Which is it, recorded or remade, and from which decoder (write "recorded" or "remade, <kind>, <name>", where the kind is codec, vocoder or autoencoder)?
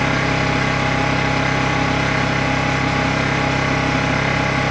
recorded